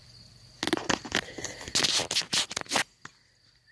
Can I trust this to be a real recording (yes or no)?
yes